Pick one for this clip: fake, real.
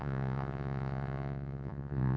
fake